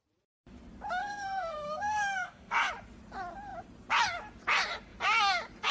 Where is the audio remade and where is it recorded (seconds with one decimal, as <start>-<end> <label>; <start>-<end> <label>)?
0.0-1.0 recorded; 1.0-2.7 remade; 2.7-5.7 recorded